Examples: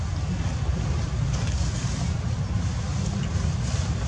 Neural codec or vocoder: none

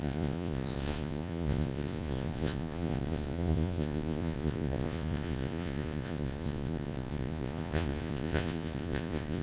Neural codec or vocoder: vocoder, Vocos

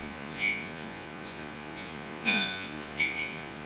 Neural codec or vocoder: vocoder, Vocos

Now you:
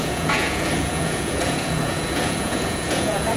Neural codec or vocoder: vocoder, Vocos